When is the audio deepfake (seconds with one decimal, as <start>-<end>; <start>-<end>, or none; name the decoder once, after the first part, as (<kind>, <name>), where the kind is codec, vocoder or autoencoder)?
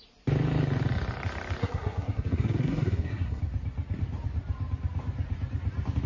1.6-3.4 (codec, SNAC)